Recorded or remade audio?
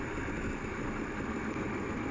recorded